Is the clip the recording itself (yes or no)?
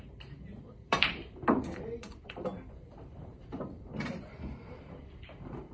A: no